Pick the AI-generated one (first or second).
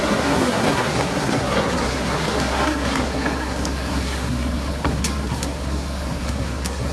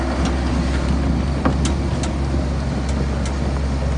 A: first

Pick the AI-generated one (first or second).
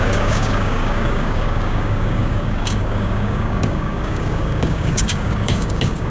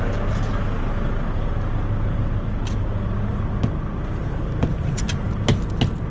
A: first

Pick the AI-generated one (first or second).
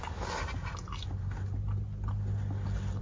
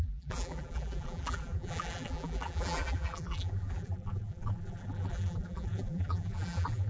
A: second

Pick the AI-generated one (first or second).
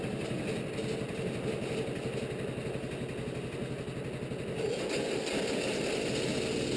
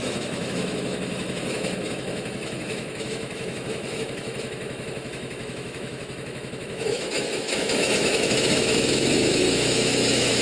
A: second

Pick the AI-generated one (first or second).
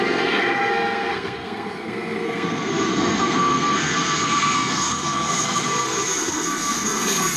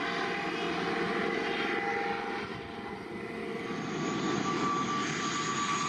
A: first